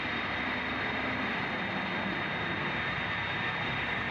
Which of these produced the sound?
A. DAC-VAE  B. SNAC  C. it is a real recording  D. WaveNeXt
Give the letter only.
C